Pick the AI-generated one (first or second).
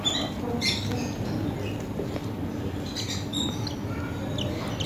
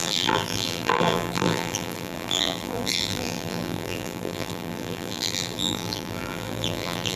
second